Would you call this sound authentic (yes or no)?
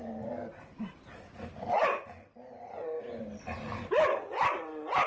yes